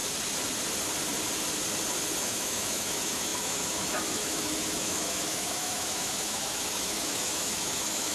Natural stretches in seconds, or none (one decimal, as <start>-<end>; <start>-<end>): 0.0-2.2